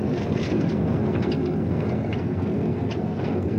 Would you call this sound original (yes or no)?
no